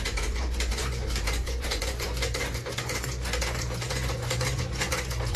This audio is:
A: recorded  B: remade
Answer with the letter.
B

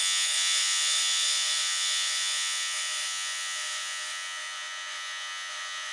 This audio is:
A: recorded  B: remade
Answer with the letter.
B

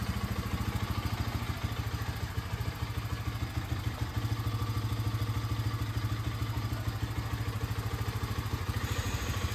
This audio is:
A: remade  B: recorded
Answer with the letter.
B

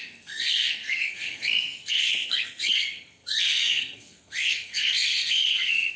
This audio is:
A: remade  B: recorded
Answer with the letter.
A